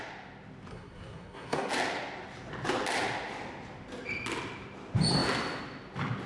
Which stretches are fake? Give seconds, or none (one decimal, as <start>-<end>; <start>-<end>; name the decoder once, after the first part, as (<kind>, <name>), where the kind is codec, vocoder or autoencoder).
0.7-1.7 (codec, SNAC)